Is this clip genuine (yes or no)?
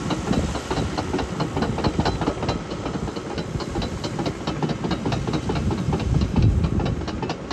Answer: yes